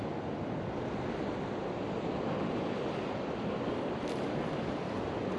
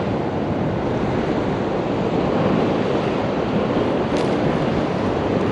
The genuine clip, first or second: first